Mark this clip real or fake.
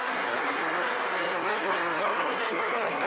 fake